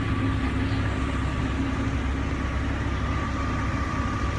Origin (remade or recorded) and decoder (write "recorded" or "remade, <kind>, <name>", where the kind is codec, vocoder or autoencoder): recorded